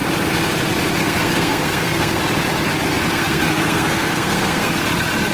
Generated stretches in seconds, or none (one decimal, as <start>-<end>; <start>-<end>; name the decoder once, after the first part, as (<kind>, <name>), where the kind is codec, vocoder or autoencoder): 1.0-2.2 (codec, SNAC); 3.1-4.7